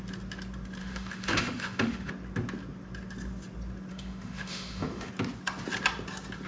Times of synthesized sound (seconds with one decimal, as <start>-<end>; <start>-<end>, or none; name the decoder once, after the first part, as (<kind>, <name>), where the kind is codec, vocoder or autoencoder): 0.8-2.1 (autoencoder, DAC-VAE); 3.9-5.1